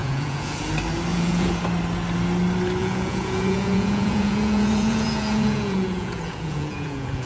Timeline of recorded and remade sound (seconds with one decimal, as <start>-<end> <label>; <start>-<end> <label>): 0.0-0.7 remade; 0.7-1.1 recorded; 1.1-1.6 remade; 1.6-2.8 recorded; 2.8-7.3 remade